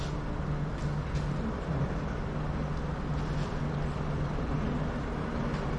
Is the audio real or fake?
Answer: real